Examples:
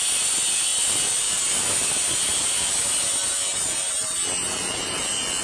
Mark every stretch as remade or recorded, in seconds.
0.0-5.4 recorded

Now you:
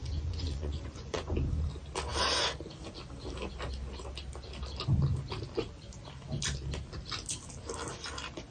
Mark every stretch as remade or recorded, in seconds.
0.0-1.3 remade; 1.3-8.5 recorded

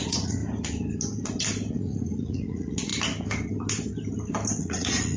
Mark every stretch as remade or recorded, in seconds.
0.0-0.4 remade; 0.4-1.7 recorded; 1.7-2.9 remade; 2.9-4.6 recorded; 4.6-5.2 remade

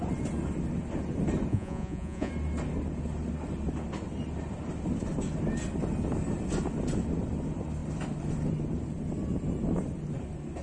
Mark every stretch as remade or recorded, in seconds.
0.0-1.5 recorded; 1.5-2.3 remade; 2.3-10.6 recorded

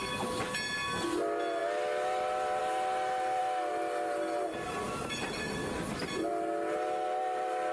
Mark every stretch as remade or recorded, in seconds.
0.0-7.7 recorded